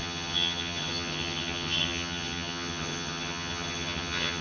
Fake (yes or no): yes